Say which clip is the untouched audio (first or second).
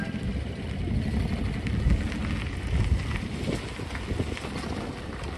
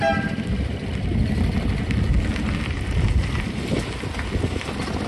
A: first